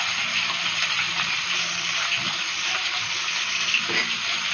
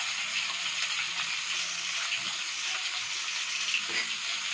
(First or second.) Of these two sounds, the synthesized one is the first